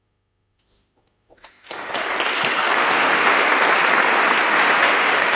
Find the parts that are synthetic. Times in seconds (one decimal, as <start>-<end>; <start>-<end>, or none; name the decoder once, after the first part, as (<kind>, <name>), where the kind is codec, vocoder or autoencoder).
0.0-2.0 (autoencoder, DAC-VAE); 2.5-3.4; 4.5-5.4